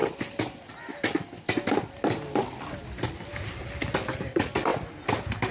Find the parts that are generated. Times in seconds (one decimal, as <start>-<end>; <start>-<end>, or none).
none